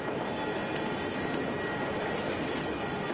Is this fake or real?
real